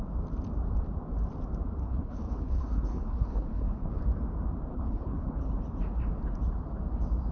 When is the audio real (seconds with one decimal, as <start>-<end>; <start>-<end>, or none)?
0.0-1.8; 4.0-4.7; 5.5-7.3